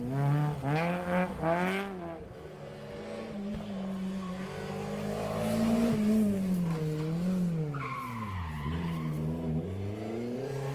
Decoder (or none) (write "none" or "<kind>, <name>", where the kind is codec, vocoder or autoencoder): none